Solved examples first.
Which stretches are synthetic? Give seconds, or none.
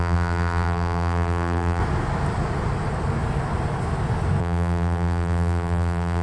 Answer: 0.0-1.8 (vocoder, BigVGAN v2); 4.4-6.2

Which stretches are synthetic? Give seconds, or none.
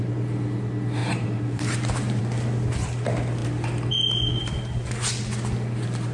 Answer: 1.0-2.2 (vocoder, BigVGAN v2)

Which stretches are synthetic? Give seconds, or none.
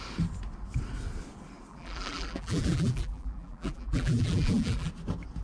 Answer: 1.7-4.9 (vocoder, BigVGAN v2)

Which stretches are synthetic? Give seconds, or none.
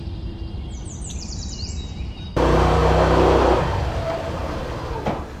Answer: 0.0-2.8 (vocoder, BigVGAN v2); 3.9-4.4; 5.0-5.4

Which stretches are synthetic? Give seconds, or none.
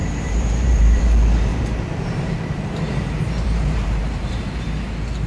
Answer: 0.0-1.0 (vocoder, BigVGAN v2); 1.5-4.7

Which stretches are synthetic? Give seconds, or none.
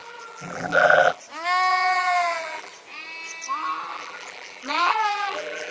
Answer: 0.0-1.2 (vocoder, BigVGAN v2); 1.7-2.7; 3.9-5.7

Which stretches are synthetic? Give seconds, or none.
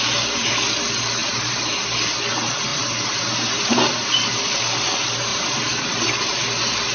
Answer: 1.2-1.7 (vocoder, BigVGAN v2); 2.7-4.4; 5.3-6.1